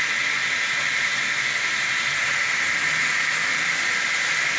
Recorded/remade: recorded